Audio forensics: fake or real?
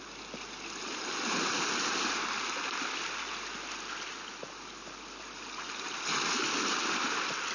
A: real